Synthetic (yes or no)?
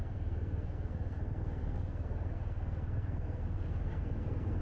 yes